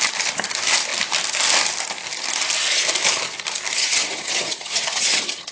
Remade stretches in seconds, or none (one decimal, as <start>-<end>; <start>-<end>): 3.8-5.5